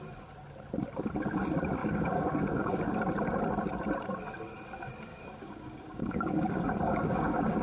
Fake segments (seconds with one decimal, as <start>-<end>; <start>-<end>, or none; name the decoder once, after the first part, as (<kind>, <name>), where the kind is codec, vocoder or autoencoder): 1.8-2.9 (codec, DAC); 5.1-7.6

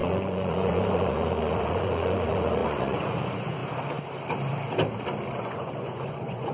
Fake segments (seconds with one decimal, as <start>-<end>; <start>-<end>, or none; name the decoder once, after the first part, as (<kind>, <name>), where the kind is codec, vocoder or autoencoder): 0.0-3.6 (vocoder, Vocos); 5.4-6.5

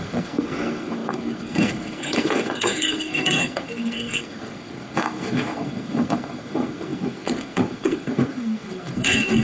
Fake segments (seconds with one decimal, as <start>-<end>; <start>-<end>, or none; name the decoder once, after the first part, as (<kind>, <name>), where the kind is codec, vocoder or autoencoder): 0.0-9.4 (codec, SNAC)

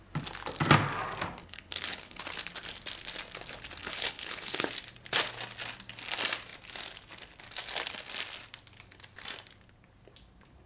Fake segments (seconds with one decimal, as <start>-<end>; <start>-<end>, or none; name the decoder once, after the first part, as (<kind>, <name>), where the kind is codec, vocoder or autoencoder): 1.4-2.2 (codec, HILCodec); 3.8-4.7